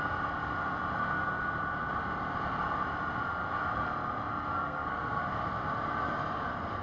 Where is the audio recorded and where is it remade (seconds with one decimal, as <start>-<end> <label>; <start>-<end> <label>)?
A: 0.0-4.6 recorded; 4.6-5.2 remade; 5.2-6.8 recorded